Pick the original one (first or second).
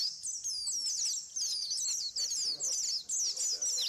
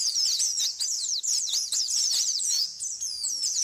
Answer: first